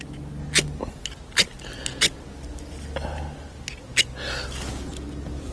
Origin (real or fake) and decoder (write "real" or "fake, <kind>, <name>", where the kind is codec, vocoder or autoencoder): real